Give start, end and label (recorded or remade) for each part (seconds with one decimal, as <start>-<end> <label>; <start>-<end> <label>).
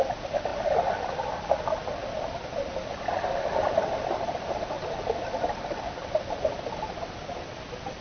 0.0-8.0 recorded